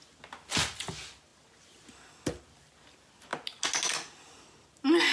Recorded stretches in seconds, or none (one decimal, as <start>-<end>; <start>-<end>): 0.0-5.1